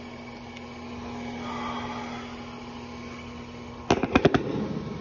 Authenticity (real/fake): real